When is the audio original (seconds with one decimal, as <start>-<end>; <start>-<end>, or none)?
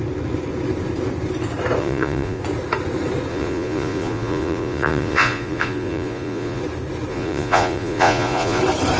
0.0-1.8; 2.4-3.3; 6.6-7.1; 8.6-9.0